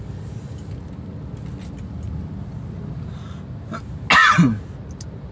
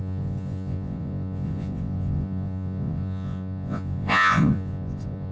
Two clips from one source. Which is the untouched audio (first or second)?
first